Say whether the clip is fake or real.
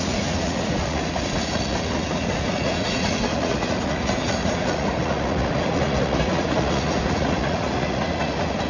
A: fake